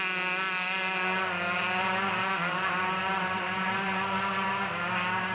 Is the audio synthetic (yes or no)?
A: no